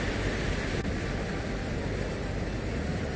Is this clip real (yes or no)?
yes